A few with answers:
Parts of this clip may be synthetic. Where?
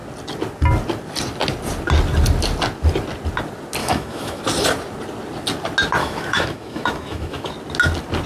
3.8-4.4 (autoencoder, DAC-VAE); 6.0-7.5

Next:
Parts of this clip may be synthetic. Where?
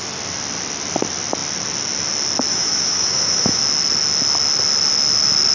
2.5-3.6 (autoencoder, DAC-VAE)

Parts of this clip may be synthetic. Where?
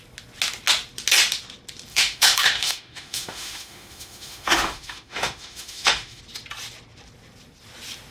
1.9-6.2 (autoencoder, DAC-VAE)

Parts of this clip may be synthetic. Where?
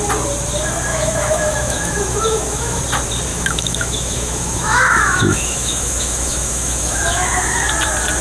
0.9-2.8 (autoencoder, DAC-VAE); 3.3-7.7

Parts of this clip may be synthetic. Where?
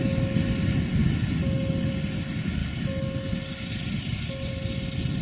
none